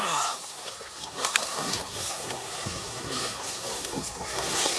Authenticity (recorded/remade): remade